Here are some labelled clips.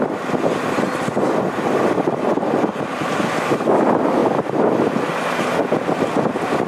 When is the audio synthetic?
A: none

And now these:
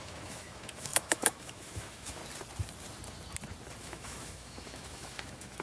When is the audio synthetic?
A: 0.0-2.2; 3.8-5.6